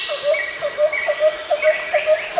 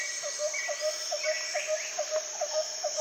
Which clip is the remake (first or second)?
first